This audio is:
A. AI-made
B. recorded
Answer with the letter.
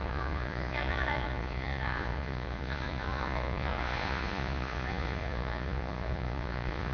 A